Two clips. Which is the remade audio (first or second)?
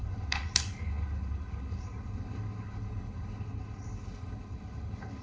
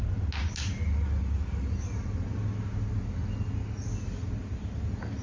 first